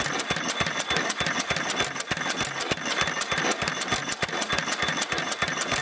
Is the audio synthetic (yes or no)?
no